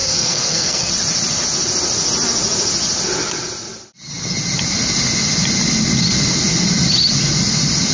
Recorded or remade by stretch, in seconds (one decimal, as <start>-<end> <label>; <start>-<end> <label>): 0.0-0.9 remade; 0.9-7.9 recorded